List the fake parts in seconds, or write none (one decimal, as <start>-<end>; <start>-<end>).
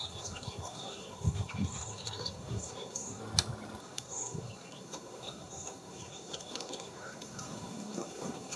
0.0-3.2; 3.8-8.6